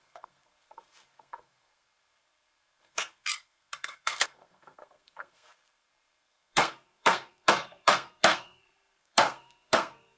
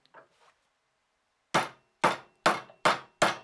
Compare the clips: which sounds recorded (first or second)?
second